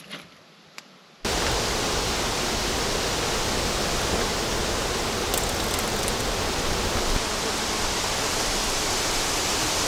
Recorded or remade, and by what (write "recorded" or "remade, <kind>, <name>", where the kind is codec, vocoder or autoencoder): recorded